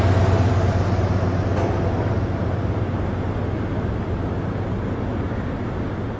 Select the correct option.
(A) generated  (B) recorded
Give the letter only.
B